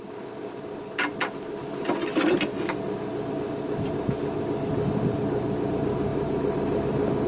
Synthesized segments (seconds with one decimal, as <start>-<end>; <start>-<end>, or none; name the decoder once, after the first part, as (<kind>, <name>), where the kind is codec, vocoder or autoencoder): 6.1-7.3 (vocoder, BigVGAN v2)